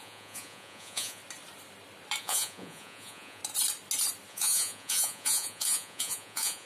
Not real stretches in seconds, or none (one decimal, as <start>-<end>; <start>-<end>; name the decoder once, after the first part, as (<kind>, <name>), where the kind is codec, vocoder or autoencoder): 0.0-1.2 (vocoder, Vocos); 2.2-3.4; 4.3-6.7